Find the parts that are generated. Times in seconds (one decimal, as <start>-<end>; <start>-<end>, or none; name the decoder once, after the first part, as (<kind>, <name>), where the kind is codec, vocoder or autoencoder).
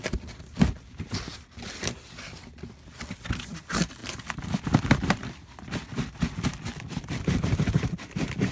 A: 0.0-8.5 (vocoder, BigVGAN v2)